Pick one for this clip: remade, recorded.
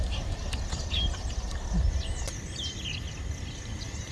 recorded